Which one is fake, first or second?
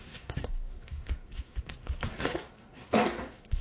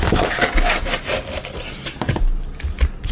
first